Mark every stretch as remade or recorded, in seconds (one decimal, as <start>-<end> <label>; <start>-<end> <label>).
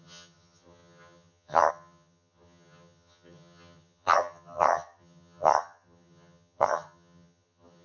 0.0-7.8 remade